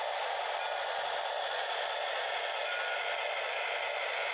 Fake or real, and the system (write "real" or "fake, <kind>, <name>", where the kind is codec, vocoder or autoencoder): fake, vocoder, BigVGAN v2